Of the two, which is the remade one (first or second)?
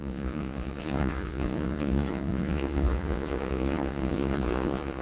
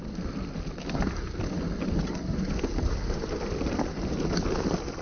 first